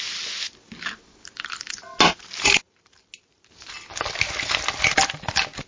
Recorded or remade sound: recorded